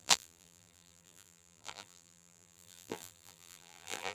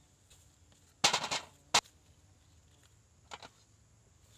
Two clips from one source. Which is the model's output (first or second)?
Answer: first